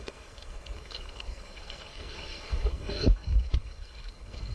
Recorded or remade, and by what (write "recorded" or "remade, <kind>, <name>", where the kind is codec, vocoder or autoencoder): remade, codec, SNAC